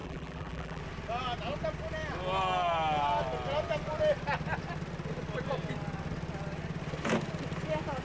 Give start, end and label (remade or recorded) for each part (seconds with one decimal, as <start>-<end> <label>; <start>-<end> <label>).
0.0-0.8 remade; 0.8-8.0 recorded